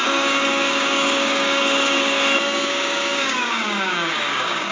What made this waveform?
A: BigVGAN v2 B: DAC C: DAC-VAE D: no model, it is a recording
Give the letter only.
B